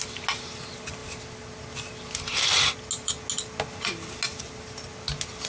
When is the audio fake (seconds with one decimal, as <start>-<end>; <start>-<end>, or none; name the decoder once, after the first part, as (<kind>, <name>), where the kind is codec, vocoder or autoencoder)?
none